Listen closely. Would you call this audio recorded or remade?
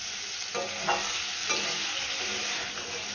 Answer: recorded